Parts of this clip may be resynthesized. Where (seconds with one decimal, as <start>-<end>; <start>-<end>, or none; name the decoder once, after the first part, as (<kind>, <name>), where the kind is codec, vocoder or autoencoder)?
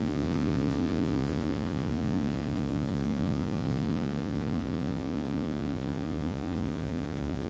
0.0-7.5 (vocoder, Vocos)